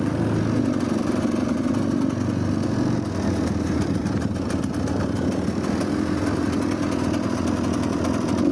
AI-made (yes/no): no